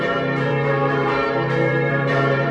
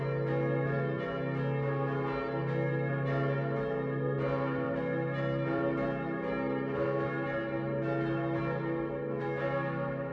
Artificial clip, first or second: first